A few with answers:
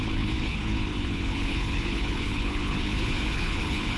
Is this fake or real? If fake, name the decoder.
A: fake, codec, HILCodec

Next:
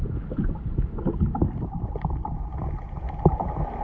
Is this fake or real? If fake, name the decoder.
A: real